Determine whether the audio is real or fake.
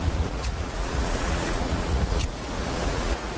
fake